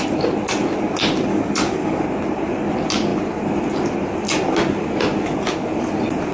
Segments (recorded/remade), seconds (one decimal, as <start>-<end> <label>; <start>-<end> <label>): 0.0-1.3 recorded; 1.3-2.0 remade; 2.0-6.3 recorded